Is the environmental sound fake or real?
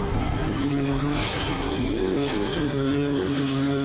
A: fake